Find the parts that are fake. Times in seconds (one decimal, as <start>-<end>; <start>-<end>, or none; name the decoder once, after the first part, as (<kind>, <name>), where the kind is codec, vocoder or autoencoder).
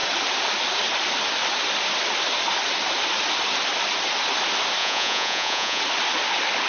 4.8-5.8 (vocoder, Vocos)